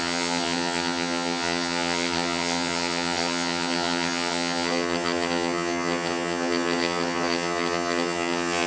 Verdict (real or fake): fake